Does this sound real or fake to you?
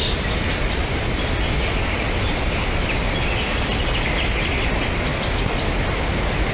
real